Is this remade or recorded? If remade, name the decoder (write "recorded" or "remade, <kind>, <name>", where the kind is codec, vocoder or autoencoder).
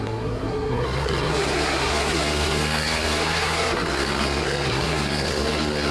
remade, codec, SNAC